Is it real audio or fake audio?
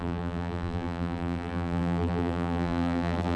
fake